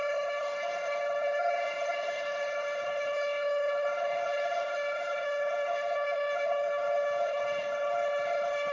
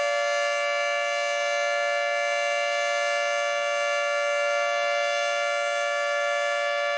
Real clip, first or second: second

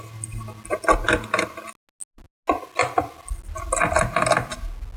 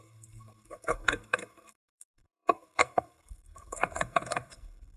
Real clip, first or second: first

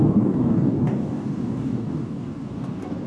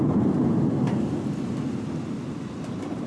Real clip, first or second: second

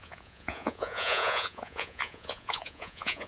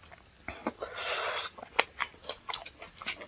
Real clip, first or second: second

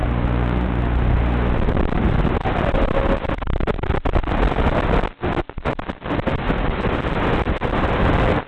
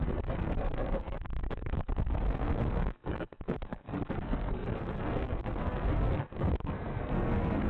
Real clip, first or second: first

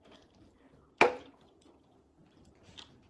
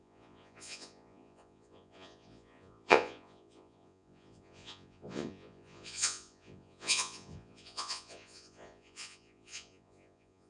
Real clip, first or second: first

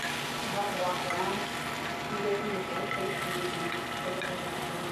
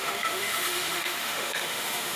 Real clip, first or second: first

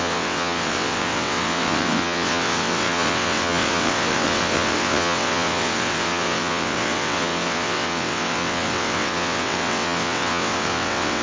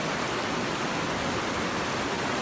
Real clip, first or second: second